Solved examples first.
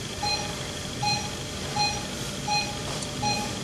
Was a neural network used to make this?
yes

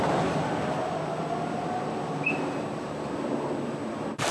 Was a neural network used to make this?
no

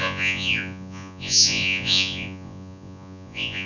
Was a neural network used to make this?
yes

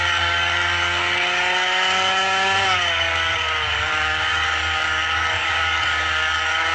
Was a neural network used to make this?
yes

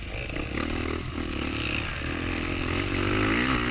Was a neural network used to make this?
no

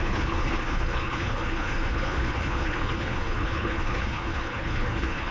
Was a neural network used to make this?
yes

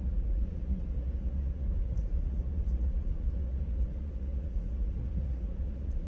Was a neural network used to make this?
yes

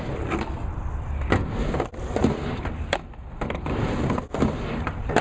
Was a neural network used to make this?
no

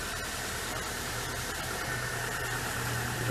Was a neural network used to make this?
no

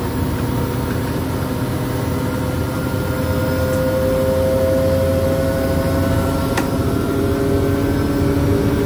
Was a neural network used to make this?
no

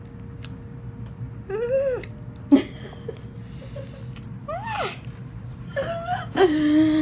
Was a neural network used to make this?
no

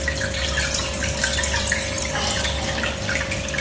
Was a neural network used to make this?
no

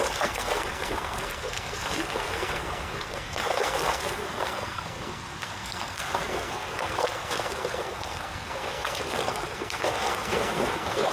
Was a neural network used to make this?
yes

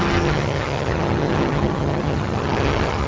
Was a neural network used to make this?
yes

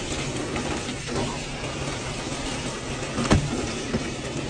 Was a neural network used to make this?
no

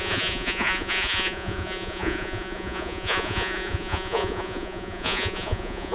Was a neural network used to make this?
yes